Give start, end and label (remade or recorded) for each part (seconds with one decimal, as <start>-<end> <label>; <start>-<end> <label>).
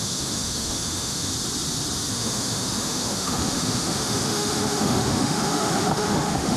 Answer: 0.0-1.3 remade; 1.3-2.1 recorded; 2.1-6.6 remade